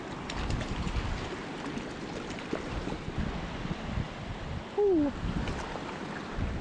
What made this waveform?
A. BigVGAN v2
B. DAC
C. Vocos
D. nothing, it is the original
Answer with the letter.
D